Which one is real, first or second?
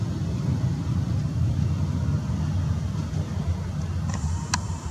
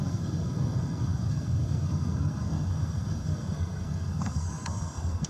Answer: first